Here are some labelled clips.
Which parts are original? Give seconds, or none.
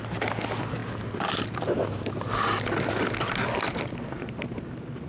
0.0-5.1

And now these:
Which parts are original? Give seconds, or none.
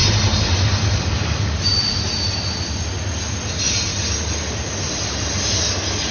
0.0-6.1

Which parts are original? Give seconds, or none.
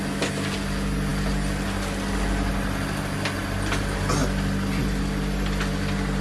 0.0-6.2